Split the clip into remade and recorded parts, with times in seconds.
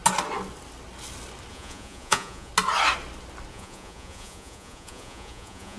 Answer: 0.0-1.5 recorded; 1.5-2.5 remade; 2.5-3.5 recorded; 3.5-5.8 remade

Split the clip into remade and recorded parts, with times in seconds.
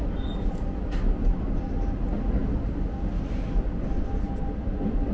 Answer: 0.0-5.1 recorded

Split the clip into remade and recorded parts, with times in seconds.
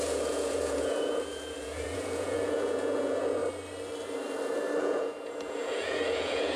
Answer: 0.0-3.4 remade; 3.4-4.8 recorded; 4.8-6.6 remade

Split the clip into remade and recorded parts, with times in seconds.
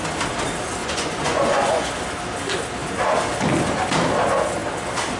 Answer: 0.0-0.8 recorded; 0.8-1.9 remade; 1.9-5.2 recorded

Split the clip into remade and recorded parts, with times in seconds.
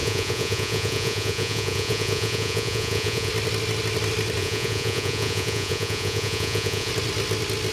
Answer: 0.0-3.3 remade; 3.3-4.4 recorded; 4.4-6.9 remade; 6.9-7.7 recorded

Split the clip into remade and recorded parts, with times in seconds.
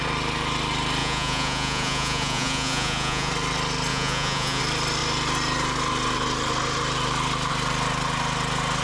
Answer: 0.0-1.0 recorded; 1.0-3.3 remade; 3.3-3.9 recorded; 3.9-4.6 remade; 4.6-8.8 recorded